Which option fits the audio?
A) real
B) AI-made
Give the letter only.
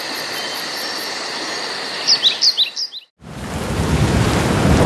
A